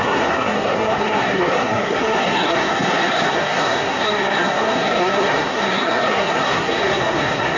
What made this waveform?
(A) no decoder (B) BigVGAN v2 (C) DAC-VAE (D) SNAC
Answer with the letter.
D